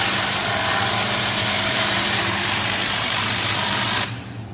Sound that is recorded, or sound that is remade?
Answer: remade